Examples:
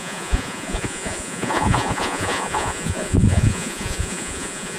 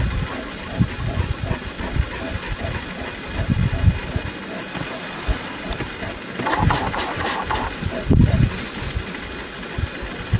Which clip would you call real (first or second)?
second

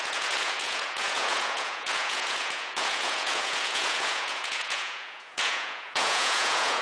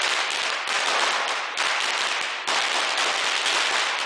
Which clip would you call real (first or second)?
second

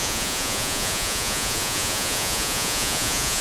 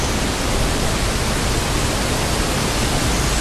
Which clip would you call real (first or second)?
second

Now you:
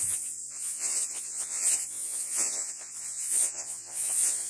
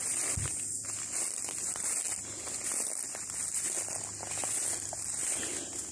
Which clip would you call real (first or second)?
second